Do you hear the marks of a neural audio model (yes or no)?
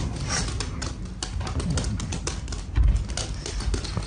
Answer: no